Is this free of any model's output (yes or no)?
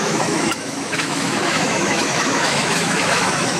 no